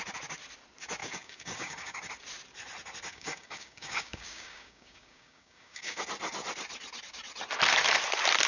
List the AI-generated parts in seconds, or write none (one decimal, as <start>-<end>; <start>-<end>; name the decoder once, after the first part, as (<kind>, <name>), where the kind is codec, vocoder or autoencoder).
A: 1.0-2.1 (codec, DAC); 3.1-6.0